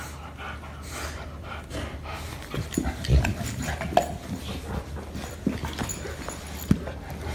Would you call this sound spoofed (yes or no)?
no